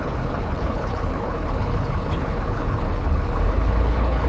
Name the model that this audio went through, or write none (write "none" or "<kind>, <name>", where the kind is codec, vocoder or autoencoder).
codec, HILCodec